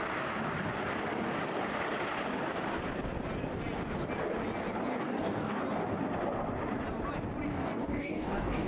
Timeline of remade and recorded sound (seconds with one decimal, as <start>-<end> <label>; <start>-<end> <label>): 0.0-4.9 recorded; 4.9-5.6 remade; 5.6-7.5 recorded; 7.5-8.7 remade